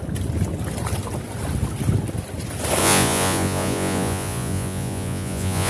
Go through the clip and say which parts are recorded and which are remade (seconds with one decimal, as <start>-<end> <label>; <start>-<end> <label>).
0.0-2.8 recorded; 2.8-5.7 remade